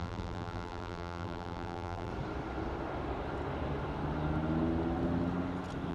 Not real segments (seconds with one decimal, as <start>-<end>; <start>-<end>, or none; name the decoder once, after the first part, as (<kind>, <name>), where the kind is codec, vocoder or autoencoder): 0.0-2.1 (vocoder, BigVGAN v2)